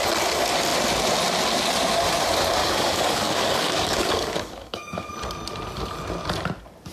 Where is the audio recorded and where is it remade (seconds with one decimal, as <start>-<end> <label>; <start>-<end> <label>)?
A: 0.0-2.6 recorded; 2.6-5.1 remade; 5.1-6.9 recorded